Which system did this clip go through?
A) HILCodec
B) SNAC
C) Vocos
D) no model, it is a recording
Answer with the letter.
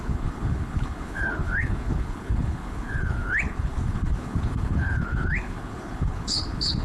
A